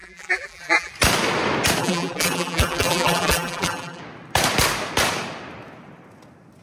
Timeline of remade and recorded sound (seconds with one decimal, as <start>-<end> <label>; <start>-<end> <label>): 0.0-0.9 remade; 0.9-1.8 recorded; 1.8-4.0 remade; 4.0-6.6 recorded